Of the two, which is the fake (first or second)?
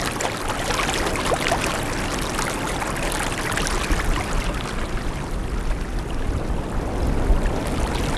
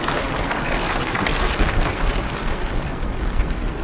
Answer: second